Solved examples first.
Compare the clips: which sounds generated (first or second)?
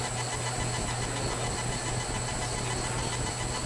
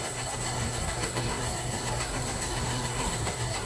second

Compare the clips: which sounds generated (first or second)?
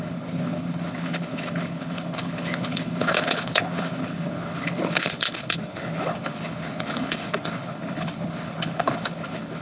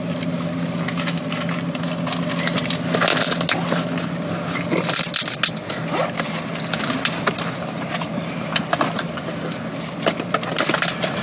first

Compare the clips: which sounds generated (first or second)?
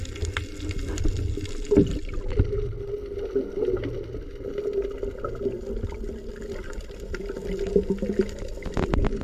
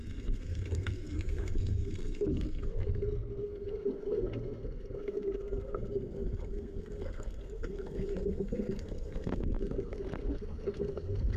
second